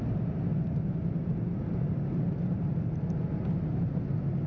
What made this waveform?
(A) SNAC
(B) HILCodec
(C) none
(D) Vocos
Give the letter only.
C